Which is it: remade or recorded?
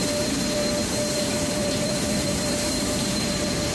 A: remade